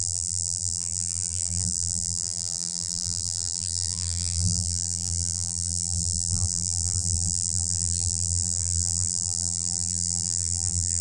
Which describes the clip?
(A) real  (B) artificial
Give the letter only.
B